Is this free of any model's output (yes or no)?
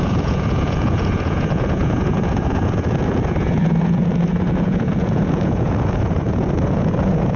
no